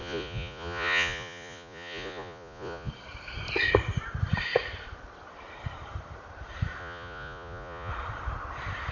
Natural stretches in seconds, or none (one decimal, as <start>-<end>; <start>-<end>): 2.9-6.8; 7.9-8.9